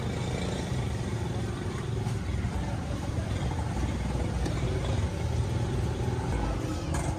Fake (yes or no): no